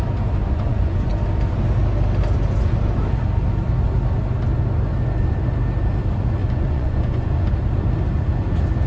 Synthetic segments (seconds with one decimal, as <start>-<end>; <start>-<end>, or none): 0.4-1.1; 6.4-7.5

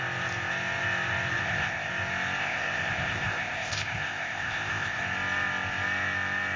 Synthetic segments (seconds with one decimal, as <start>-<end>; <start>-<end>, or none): 1.4-1.9; 2.4-5.0

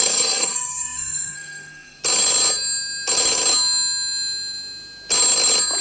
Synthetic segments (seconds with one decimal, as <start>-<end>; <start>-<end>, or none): 0.0-2.0